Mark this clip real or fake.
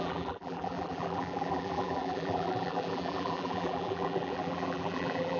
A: fake